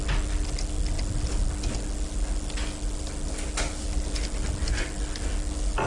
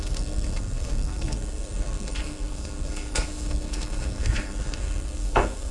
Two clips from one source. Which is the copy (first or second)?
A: second